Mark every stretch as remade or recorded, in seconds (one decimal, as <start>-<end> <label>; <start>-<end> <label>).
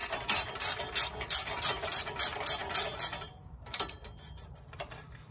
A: 0.0-0.5 remade; 0.5-5.3 recorded